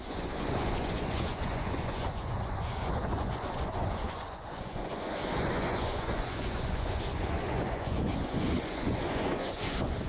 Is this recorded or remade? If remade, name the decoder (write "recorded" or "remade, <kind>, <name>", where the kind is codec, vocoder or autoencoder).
remade, vocoder, Vocos